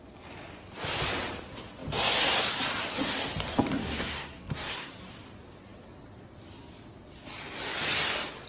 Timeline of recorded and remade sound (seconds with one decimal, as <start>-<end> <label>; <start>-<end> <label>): 0.0-3.8 recorded; 3.8-4.9 remade; 4.9-8.5 recorded